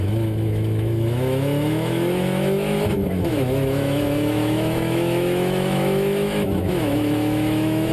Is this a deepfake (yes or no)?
yes